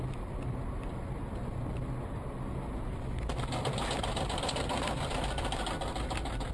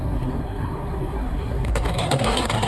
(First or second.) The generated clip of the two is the second